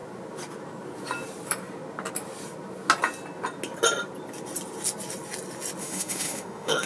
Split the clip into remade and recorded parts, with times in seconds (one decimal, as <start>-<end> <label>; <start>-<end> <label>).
0.0-5.8 recorded; 5.8-6.9 remade